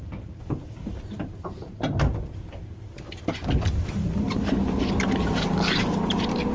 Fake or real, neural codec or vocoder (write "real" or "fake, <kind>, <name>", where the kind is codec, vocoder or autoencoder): fake, vocoder, BigVGAN v2